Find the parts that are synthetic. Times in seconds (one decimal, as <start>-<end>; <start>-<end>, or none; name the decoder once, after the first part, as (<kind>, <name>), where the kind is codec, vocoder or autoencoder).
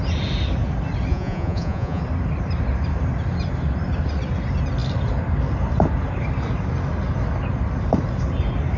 1.1-2.0 (vocoder, Vocos)